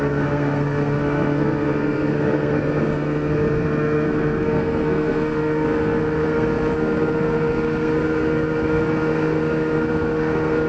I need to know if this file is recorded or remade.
remade